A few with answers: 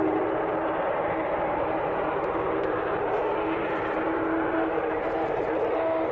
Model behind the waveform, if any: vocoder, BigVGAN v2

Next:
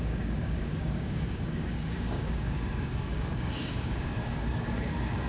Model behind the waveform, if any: codec, DAC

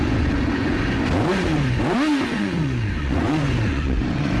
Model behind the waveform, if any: vocoder, Vocos